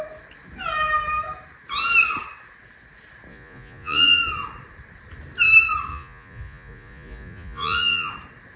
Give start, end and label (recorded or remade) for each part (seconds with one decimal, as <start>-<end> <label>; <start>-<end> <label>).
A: 0.0-3.3 recorded; 3.3-4.2 remade; 4.2-5.9 recorded; 5.9-8.1 remade; 8.1-8.6 recorded